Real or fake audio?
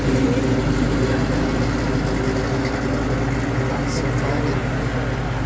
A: real